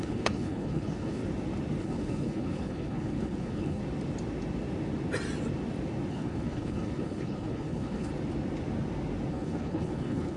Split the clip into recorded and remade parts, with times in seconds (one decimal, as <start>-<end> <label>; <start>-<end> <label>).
0.0-1.2 remade; 1.2-1.8 recorded; 1.8-3.8 remade; 3.8-6.1 recorded; 6.1-8.1 remade; 8.1-9.3 recorded; 9.3-10.4 remade